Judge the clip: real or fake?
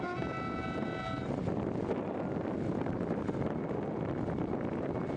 real